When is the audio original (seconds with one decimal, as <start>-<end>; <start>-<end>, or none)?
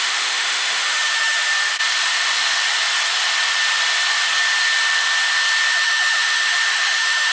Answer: 1.5-5.7